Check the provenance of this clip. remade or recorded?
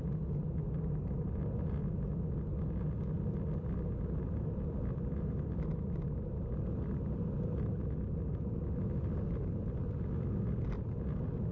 recorded